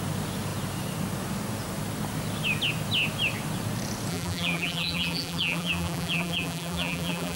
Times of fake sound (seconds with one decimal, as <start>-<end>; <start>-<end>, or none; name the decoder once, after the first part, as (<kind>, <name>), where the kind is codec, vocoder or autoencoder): 4.1-7.4 (vocoder, BigVGAN v2)